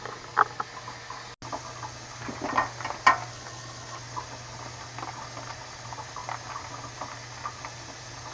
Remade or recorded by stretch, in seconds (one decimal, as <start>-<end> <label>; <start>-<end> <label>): 0.0-3.3 recorded; 3.3-4.0 remade; 4.0-8.3 recorded